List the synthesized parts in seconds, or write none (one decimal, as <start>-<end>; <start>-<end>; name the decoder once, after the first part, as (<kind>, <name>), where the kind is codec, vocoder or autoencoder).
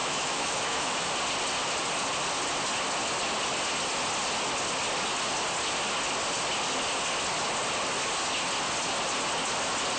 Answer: 0.0-1.1 (autoencoder, DAC-VAE)